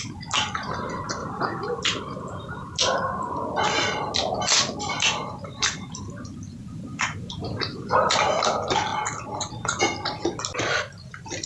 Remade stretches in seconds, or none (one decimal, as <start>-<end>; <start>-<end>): 1.2-1.8; 5.2-6.0; 6.6-8.1